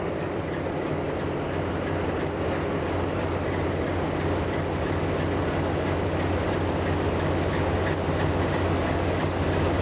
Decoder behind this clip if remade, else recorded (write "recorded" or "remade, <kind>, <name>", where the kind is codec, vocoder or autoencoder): recorded